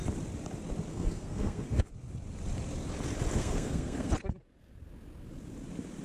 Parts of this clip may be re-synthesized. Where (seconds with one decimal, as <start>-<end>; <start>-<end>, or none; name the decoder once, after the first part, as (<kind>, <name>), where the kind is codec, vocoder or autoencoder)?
0.9-1.9 (codec, SNAC); 3.4-4.1